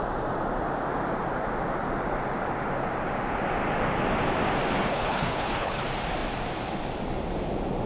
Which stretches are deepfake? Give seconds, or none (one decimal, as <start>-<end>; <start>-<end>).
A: 4.8-5.8